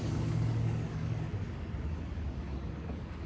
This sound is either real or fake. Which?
fake